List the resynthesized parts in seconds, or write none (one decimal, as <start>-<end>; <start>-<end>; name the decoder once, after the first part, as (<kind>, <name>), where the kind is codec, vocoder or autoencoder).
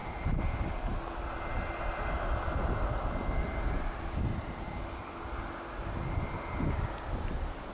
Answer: none